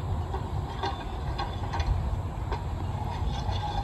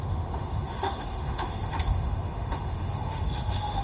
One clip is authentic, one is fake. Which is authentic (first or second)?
first